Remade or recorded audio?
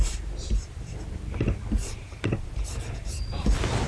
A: recorded